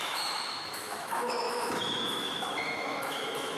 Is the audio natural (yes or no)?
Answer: no